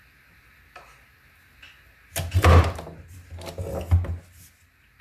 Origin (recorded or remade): recorded